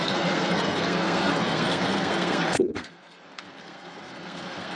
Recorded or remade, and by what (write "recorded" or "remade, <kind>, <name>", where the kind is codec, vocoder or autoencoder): remade, codec, SNAC